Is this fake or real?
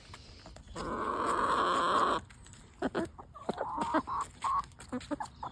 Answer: real